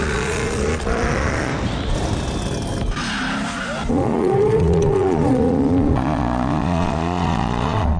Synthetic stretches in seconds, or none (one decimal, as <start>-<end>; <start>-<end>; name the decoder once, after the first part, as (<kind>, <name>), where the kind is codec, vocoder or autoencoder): 0.0-1.5 (vocoder, Vocos); 3.9-8.0